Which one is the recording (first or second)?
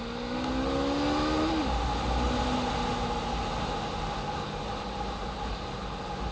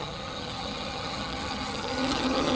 first